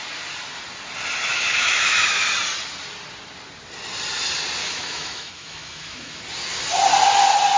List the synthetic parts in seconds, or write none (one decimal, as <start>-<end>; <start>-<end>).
1.3-2.2; 4.6-6.2